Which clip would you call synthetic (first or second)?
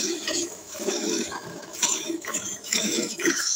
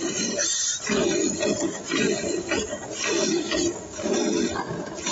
first